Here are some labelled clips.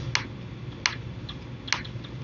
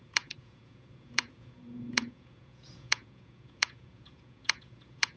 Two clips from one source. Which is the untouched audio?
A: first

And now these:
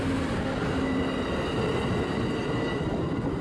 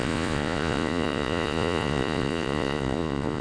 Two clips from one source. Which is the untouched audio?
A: first